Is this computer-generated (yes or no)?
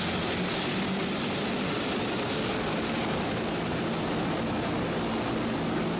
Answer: no